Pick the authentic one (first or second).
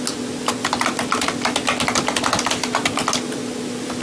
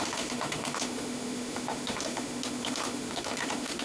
first